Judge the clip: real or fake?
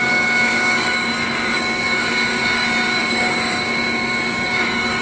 fake